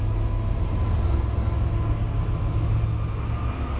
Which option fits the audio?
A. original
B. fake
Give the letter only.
A